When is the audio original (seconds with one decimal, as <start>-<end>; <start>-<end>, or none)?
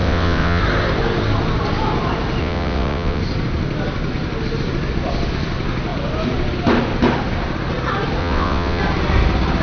0.6-2.4; 3.2-8.2; 8.8-9.6